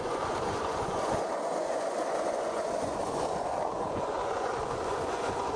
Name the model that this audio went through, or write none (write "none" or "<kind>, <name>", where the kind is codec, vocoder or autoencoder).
vocoder, Vocos